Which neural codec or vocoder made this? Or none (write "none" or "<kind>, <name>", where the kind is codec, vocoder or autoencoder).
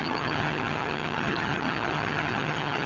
vocoder, HiFi-GAN